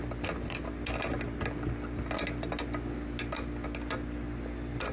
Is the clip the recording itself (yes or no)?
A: yes